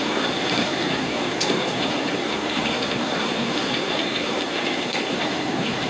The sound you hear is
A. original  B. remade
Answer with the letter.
B